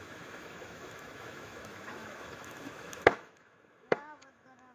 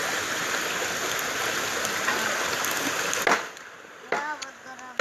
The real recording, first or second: second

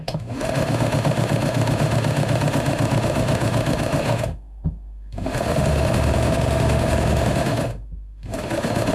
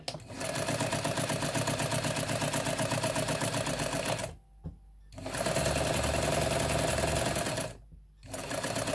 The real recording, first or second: second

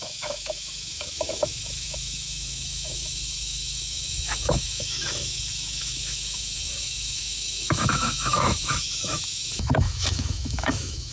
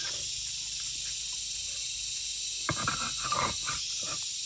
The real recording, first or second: second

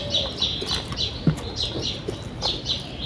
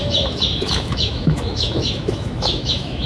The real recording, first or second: first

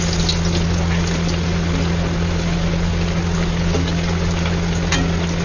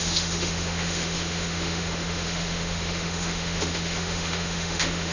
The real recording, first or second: first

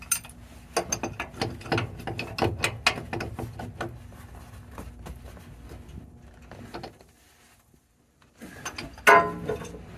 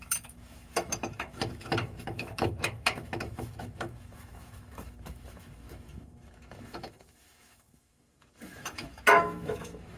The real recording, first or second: first